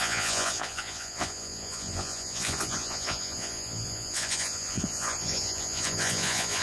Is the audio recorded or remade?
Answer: remade